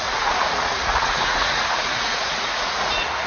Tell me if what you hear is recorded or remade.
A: remade